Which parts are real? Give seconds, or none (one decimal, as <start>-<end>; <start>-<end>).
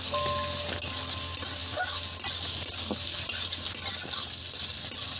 0.0-5.2